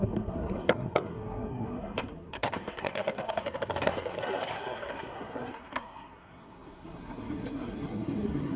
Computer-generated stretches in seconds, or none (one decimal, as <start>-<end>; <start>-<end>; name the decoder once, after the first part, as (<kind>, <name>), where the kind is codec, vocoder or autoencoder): 0.0-8.6 (codec, SNAC)